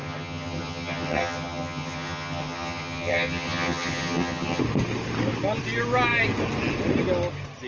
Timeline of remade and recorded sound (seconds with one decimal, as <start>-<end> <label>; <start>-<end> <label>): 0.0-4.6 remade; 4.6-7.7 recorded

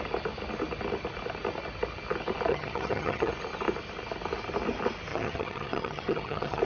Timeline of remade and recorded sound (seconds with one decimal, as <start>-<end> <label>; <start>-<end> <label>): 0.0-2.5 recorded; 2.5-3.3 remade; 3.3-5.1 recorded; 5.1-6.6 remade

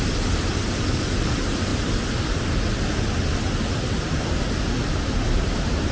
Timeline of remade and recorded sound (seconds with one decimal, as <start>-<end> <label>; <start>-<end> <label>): 0.0-5.9 recorded

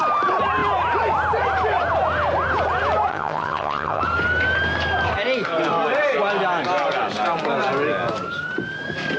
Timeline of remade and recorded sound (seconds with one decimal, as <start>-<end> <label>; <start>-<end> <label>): 0.0-3.1 recorded; 3.1-4.0 remade; 4.0-9.2 recorded

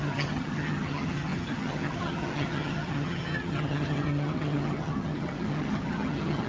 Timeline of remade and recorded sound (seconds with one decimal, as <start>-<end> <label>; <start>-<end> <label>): 0.0-6.5 remade